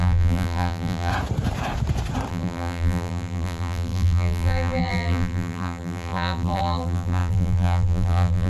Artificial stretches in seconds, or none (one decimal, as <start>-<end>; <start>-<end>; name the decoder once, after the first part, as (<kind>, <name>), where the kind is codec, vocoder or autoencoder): 0.0-1.1 (vocoder, BigVGAN v2); 2.3-8.5